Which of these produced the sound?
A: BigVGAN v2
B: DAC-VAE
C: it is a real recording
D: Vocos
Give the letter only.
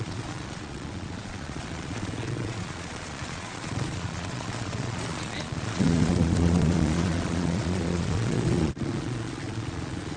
D